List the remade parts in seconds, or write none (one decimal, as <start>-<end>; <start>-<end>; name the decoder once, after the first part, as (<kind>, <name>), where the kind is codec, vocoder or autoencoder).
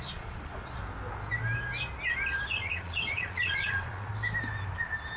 0.0-0.8 (vocoder, Vocos); 2.4-4.1